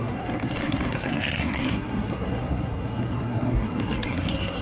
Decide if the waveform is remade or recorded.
remade